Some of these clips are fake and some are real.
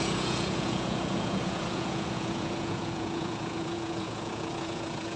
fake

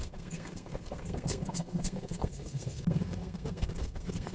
fake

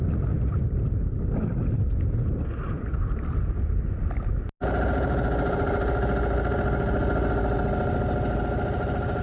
real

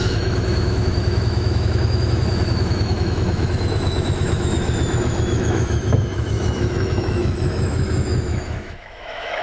fake